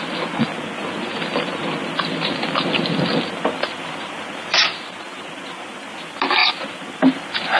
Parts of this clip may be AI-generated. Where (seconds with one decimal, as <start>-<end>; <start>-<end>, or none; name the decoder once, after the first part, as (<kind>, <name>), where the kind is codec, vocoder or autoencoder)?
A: none